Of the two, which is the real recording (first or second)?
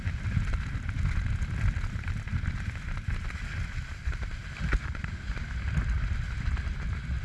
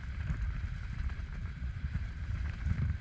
first